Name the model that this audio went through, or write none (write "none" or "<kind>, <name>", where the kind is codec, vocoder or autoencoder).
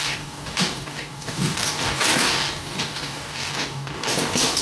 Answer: codec, DAC